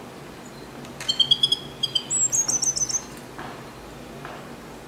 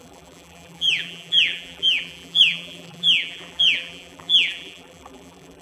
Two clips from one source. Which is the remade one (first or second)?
second